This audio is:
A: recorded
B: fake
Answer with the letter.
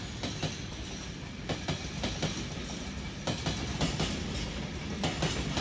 A